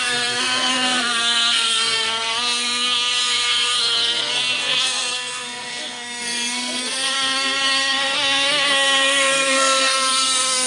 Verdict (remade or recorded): remade